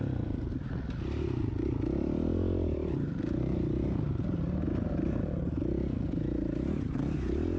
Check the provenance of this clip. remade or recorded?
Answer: recorded